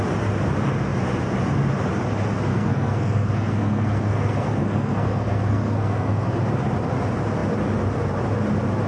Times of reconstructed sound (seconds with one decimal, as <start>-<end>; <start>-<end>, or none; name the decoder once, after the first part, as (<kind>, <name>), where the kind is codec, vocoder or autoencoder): 2.5-6.3 (codec, SNAC)